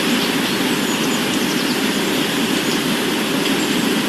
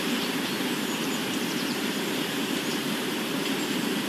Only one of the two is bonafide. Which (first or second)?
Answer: first